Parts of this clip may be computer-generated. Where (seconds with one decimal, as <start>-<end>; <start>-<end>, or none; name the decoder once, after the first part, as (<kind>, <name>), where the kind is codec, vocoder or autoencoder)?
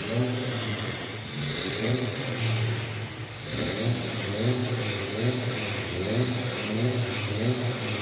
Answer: 0.7-2.4 (vocoder, WaveNeXt)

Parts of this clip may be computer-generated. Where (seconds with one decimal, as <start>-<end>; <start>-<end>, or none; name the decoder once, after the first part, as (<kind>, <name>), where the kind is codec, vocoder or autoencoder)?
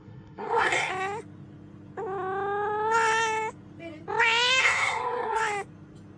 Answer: 0.0-0.9 (codec, SNAC); 4.6-5.4